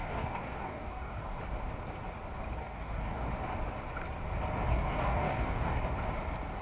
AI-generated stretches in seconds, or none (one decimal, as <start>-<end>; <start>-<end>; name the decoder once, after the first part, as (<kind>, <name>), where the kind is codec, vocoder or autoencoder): 0.0-1.4 (codec, DAC); 2.6-3.3; 4.7-5.8